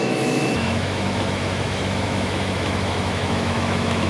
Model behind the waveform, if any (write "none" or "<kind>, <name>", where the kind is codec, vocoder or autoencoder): autoencoder, DAC-VAE